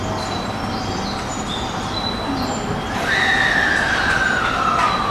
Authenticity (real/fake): real